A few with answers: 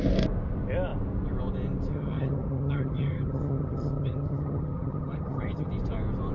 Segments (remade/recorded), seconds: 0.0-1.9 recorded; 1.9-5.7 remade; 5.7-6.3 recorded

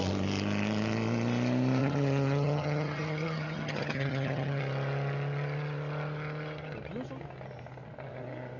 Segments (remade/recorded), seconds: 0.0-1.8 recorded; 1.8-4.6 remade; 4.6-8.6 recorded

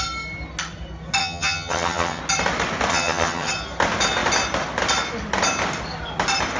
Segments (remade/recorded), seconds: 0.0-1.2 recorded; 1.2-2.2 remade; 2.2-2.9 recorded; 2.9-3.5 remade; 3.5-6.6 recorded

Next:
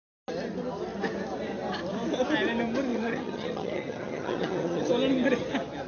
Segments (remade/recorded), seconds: 0.0-2.9 recorded; 2.9-4.9 remade; 4.9-5.9 recorded